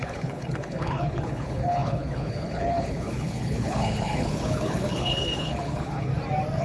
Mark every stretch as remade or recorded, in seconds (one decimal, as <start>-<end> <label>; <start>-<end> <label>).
0.0-6.1 remade; 6.1-6.6 recorded

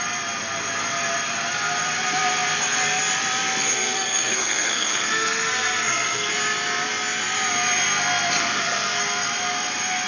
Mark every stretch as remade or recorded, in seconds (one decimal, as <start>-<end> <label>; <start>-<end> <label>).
0.0-3.6 recorded; 3.6-6.3 remade; 6.3-8.4 recorded; 8.4-9.0 remade; 9.0-10.1 recorded

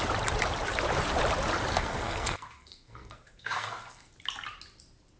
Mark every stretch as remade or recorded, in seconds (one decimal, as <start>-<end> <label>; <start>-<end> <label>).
0.0-1.7 recorded; 1.7-4.1 remade; 4.1-5.2 recorded